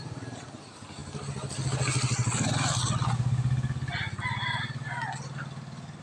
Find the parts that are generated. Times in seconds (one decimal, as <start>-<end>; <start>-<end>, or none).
none